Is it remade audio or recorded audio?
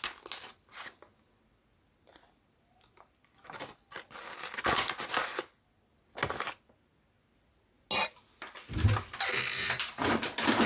recorded